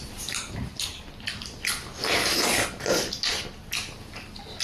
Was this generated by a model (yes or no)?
no